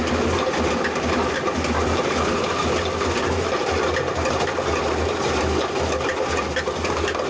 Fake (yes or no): no